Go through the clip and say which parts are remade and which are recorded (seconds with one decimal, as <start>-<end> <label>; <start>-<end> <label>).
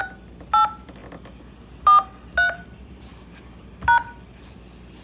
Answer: 0.0-5.0 recorded